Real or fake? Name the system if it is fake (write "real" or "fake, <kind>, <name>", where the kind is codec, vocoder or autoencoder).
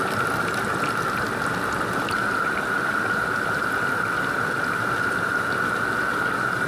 real